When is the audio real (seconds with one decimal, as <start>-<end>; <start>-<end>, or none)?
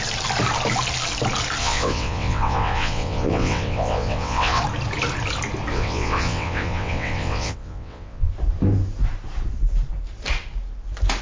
0.0-1.6; 4.6-5.7; 8.3-11.2